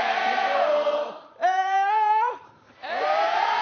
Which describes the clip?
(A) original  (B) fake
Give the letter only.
B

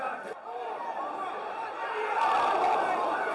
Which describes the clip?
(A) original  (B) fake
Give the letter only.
B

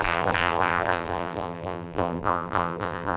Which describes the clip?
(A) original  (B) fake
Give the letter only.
B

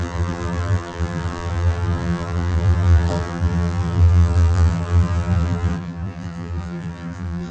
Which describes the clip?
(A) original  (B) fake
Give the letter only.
B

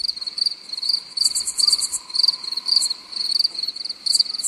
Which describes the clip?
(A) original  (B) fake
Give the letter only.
B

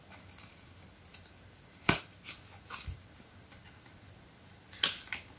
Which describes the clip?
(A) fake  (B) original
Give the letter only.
B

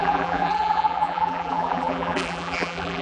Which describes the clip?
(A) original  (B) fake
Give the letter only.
B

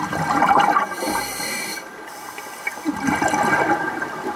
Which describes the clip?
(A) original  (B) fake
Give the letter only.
A